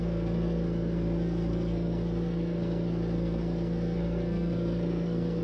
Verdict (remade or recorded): remade